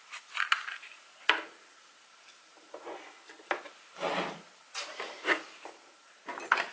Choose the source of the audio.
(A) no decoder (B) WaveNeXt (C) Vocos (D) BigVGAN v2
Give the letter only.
A